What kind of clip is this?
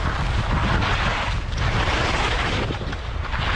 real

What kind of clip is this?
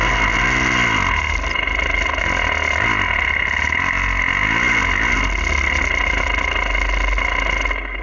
real